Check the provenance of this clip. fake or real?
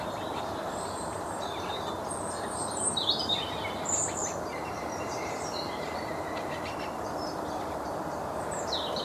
fake